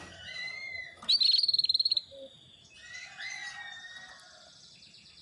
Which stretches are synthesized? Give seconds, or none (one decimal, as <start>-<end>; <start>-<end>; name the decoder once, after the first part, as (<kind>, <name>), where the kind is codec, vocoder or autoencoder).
none